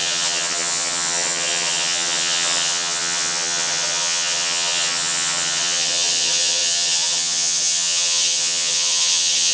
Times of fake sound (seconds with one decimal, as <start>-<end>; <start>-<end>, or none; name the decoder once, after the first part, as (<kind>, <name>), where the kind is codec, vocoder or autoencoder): 0.0-9.5 (vocoder, HiFi-GAN)